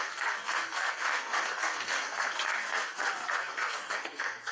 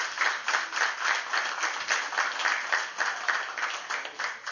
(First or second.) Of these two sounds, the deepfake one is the first